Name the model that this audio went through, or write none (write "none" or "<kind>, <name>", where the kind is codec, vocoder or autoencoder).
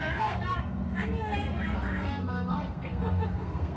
codec, SNAC